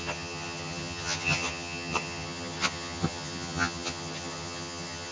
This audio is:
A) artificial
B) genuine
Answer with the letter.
A